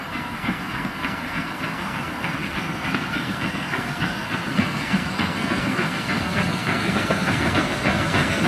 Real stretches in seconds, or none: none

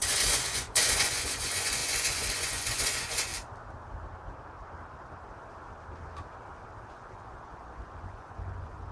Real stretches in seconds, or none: 3.3-6.8

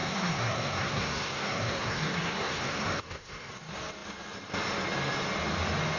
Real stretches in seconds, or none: 3.5-6.0

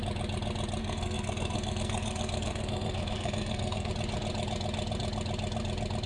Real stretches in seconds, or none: 0.0-0.8; 3.9-6.1